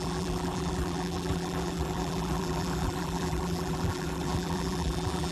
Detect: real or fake fake